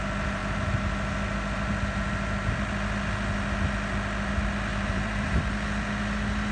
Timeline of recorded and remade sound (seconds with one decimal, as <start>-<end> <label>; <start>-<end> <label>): 0.0-4.7 recorded; 4.7-5.4 remade; 5.4-6.5 recorded